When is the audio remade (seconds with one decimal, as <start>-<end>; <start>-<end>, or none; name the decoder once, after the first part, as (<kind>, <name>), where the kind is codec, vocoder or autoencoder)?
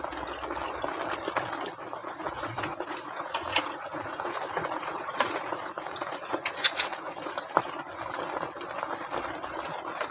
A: 2.0-7.3 (vocoder, Vocos)